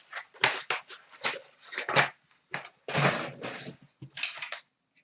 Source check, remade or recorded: recorded